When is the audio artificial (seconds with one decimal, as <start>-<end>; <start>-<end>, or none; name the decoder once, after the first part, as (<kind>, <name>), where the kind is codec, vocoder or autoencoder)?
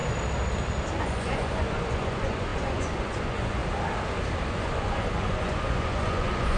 1.0-3.6 (vocoder, Vocos); 4.5-6.6